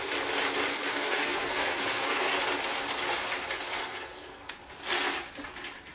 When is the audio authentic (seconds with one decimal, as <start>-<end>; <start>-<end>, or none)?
0.0-0.7; 2.4-3.8; 4.5-5.9